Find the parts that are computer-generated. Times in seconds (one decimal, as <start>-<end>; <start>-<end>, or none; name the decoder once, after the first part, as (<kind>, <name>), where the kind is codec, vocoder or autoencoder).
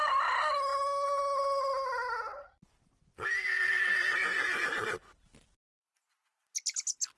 none